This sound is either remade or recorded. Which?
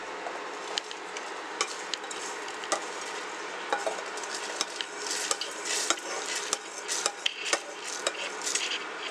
recorded